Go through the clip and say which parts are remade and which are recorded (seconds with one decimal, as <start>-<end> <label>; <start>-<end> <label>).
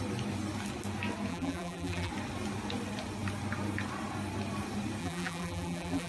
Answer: 0.0-1.3 recorded; 1.3-2.1 remade; 2.1-5.0 recorded; 5.0-6.1 remade